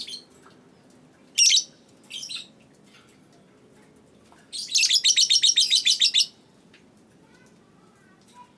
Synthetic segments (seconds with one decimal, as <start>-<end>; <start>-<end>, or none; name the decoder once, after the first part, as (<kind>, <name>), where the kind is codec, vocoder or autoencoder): none